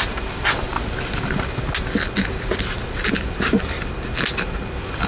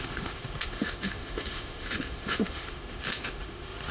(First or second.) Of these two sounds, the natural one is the first